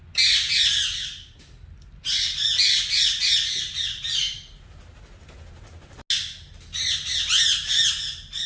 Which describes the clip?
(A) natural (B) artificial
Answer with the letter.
A